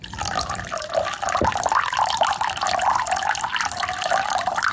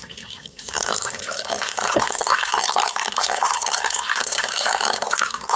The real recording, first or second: first